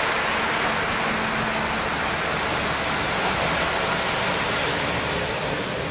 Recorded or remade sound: recorded